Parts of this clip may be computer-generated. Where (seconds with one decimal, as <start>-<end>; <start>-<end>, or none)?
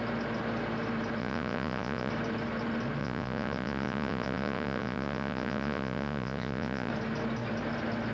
1.2-2.1; 3.0-6.9